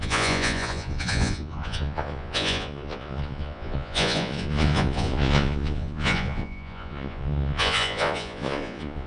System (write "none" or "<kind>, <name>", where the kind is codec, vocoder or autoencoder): vocoder, Vocos